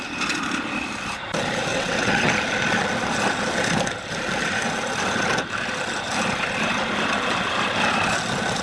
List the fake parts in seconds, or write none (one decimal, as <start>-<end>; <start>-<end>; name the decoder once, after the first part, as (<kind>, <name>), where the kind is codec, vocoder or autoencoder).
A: 1.7-2.3 (vocoder, WaveNeXt)